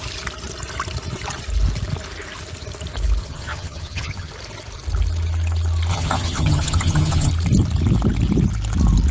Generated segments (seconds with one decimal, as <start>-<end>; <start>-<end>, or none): 3.2-4.3; 5.9-7.3

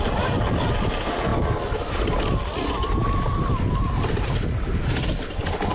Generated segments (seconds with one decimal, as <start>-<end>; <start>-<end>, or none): none

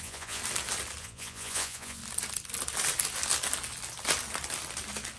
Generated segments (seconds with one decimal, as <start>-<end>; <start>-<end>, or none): 0.0-0.4; 1.0-2.0

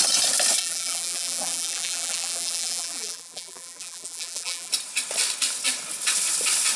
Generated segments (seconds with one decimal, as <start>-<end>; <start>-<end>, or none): 0.6-4.7

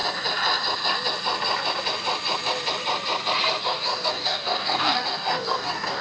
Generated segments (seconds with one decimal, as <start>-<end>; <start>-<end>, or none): 3.6-6.0

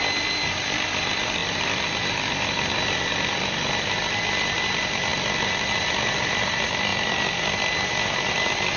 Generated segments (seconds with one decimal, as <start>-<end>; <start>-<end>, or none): none

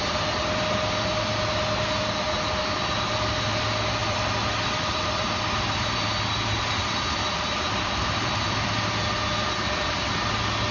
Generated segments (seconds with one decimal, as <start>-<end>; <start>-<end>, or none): 4.0-8.9

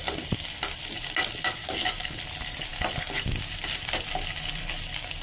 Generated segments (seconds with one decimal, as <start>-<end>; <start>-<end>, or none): 1.6-2.2